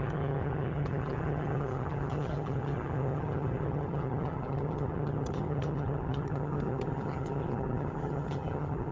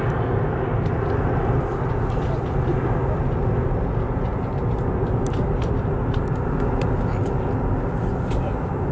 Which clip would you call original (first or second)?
second